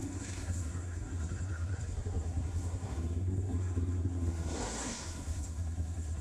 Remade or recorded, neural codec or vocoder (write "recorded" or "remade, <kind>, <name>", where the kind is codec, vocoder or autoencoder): remade, codec, SNAC